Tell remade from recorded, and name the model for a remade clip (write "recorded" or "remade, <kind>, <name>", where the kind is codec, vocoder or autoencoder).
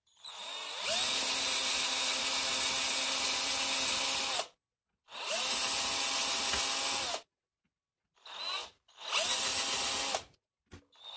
recorded